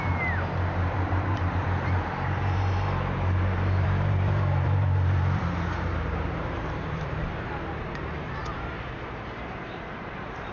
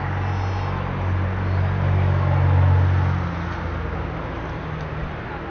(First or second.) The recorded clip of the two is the second